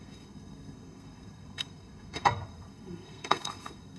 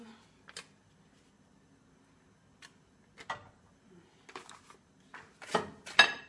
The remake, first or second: first